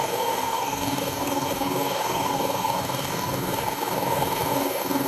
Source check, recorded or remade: remade